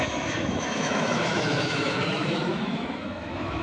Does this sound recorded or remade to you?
remade